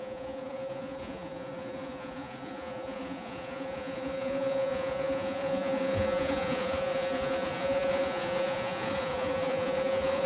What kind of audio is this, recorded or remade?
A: remade